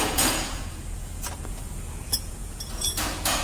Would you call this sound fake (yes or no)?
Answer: yes